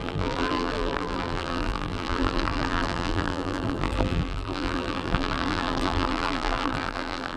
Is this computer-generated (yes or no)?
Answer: yes